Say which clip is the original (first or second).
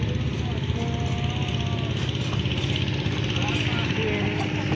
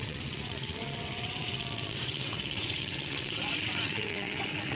first